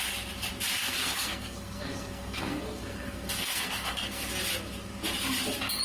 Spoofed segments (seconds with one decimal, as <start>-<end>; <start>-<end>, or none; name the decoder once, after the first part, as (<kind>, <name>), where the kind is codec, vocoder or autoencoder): 0.8-4.3 (codec, SNAC)